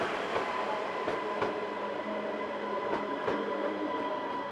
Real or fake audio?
real